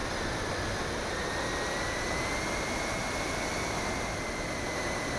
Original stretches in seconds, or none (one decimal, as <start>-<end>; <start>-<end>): 0.0-5.2